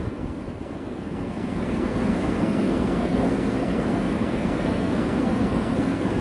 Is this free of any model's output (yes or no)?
no